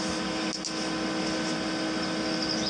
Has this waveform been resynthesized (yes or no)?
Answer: no